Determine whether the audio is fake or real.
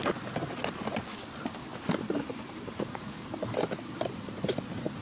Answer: real